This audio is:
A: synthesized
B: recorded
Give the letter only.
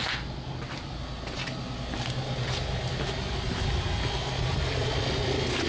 B